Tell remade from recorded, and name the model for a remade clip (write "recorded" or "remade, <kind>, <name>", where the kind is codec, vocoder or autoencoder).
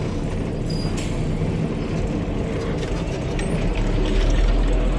recorded